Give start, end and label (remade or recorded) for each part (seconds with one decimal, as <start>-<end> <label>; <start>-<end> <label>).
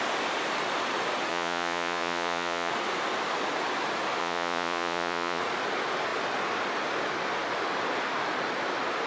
0.0-1.3 recorded; 1.3-2.7 remade; 2.7-4.2 recorded; 4.2-5.4 remade; 5.4-9.1 recorded